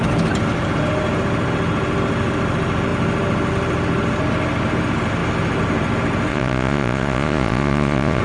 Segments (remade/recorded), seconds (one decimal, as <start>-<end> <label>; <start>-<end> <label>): 0.0-6.3 recorded; 6.3-8.2 remade